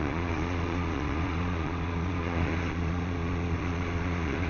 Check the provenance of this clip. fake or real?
fake